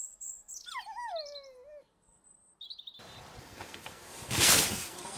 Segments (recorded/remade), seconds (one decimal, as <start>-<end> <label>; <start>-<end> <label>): 0.0-0.5 remade; 0.5-1.8 recorded; 1.8-2.2 remade; 2.2-3.4 recorded; 3.4-5.2 remade

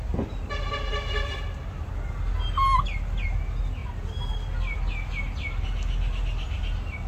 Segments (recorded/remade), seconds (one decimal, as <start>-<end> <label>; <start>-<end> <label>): 0.0-7.1 recorded

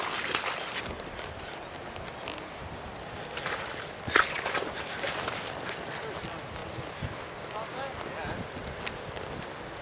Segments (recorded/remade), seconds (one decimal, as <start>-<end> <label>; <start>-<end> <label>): 0.0-6.6 remade; 6.6-9.8 recorded

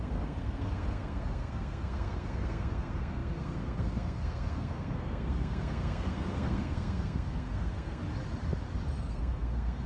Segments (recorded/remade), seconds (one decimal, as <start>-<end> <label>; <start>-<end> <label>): 0.0-8.0 remade; 8.0-9.0 recorded; 9.0-9.9 remade

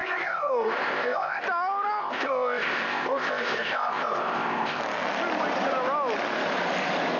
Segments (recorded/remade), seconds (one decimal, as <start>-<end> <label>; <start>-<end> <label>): 0.0-1.4 remade; 1.4-2.0 recorded; 2.0-4.8 remade; 4.8-7.2 recorded

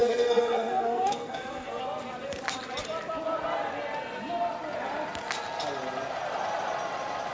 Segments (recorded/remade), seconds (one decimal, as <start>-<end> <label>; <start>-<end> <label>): 0.0-1.8 remade; 1.8-7.3 recorded